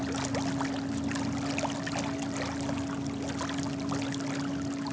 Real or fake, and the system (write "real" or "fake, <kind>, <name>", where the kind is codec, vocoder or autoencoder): real